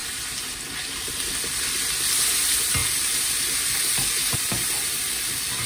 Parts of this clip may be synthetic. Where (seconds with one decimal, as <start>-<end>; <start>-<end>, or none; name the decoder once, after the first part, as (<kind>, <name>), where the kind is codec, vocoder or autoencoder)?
0.0-1.1 (vocoder, BigVGAN v2); 2.8-4.5